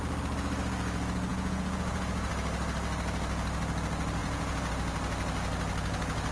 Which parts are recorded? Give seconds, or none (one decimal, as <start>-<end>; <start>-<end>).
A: 0.0-1.3; 2.3-4.2; 4.7-6.3